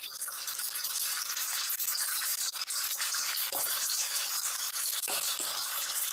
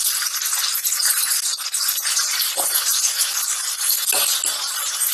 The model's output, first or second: first